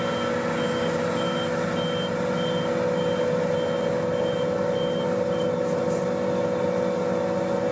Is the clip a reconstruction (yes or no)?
no